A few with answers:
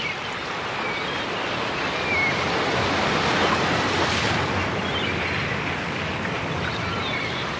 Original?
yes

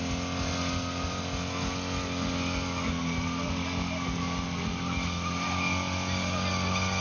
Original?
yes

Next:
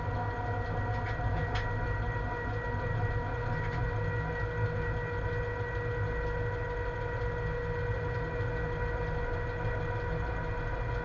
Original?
yes